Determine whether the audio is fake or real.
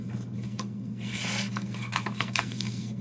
fake